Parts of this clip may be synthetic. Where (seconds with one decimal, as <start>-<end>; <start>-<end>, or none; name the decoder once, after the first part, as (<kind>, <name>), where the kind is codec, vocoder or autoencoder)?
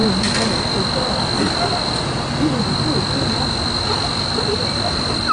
none